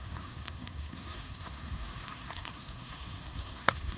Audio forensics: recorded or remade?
remade